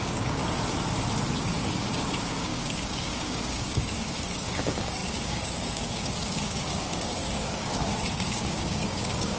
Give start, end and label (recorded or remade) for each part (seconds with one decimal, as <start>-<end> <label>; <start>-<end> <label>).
0.0-0.4 remade; 0.4-1.4 recorded; 1.4-9.4 remade